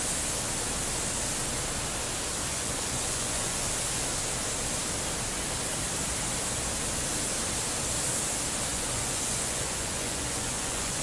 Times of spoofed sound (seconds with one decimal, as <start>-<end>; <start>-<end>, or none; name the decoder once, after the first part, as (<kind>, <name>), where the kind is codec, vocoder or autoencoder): 2.5-3.7 (vocoder, Vocos); 8.7-11.0